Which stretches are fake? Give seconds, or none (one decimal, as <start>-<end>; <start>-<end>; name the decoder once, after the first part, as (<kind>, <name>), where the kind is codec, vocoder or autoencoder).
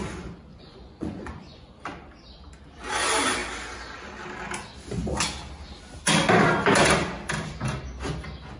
0.5-1.7 (vocoder, Vocos)